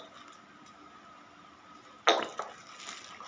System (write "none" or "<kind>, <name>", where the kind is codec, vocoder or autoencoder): none